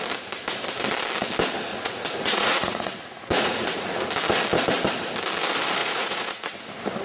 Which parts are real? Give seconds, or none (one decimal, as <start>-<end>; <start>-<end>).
0.0-1.7; 4.1-5.8; 6.5-7.0